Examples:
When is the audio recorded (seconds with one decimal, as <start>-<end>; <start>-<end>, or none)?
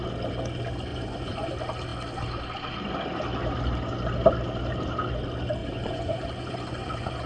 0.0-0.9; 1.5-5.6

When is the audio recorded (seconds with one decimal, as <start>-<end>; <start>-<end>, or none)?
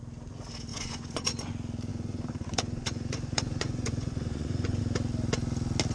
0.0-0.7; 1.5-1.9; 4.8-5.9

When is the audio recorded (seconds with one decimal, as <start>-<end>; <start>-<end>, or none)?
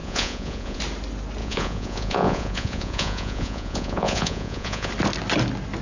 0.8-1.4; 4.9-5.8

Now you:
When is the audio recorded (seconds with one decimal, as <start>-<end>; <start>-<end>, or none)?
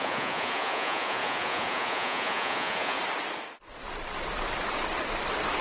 3.0-5.6